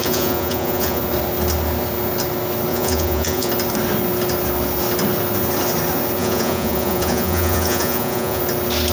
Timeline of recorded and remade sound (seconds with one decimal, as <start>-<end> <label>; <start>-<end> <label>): 0.0-1.0 remade; 1.0-2.7 recorded; 2.7-3.5 remade; 3.5-6.2 recorded; 6.2-8.4 remade; 8.4-8.9 recorded